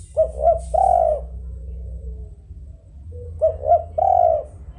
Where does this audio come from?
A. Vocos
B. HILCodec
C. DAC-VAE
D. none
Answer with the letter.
D